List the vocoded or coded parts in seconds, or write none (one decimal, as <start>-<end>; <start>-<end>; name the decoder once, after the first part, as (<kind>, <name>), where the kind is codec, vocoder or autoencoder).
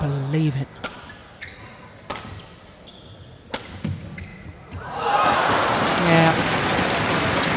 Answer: 1.2-1.9 (vocoder, Vocos); 4.3-5.5